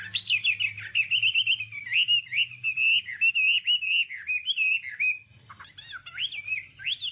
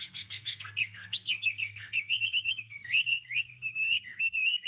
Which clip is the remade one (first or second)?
second